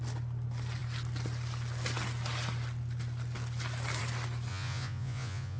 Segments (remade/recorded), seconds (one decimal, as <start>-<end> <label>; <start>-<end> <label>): 0.0-4.5 recorded; 4.5-5.6 remade